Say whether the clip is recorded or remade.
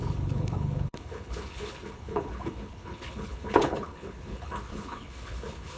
remade